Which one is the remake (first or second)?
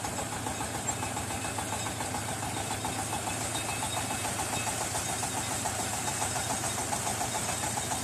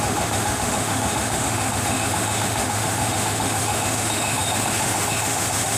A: second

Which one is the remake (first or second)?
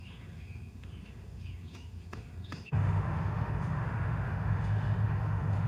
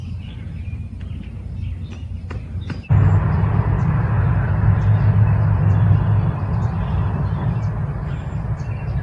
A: first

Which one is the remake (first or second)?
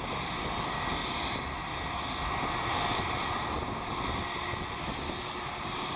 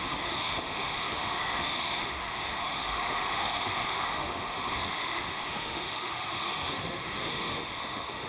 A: second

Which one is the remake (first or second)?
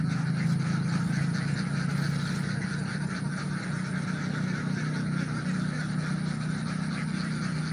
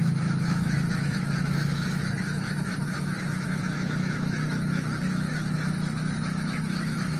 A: second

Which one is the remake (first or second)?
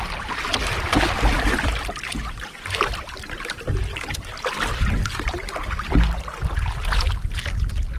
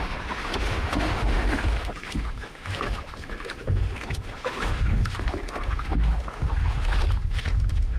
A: second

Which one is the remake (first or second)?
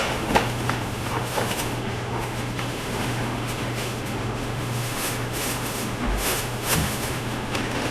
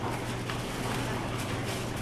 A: first